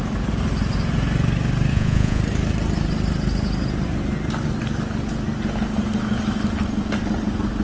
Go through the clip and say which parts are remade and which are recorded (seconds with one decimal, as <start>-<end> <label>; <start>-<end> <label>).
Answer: 0.0-1.7 recorded; 1.7-2.2 remade; 2.2-7.6 recorded